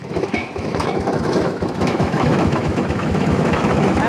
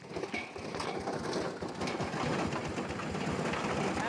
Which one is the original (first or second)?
second